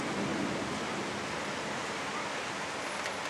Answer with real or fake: real